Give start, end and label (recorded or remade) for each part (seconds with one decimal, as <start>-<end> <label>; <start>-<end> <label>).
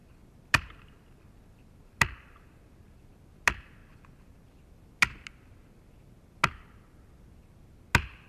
0.0-8.3 recorded